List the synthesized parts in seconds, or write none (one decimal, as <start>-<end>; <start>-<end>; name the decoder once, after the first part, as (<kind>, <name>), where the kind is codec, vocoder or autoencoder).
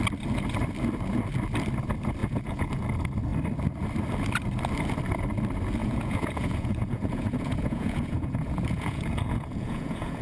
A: 2.2-2.8 (vocoder, Vocos); 5.8-10.2